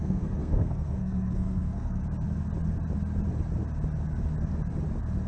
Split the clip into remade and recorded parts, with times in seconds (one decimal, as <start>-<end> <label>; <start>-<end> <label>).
0.0-2.0 remade; 2.0-5.3 recorded